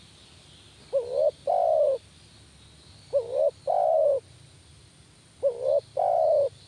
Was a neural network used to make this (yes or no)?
no